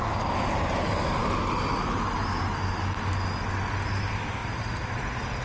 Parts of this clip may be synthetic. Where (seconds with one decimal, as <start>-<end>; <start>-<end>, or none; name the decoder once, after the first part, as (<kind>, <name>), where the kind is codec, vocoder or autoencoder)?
4.4-5.0 (vocoder, BigVGAN v2)